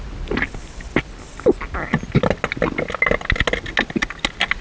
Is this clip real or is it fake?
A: real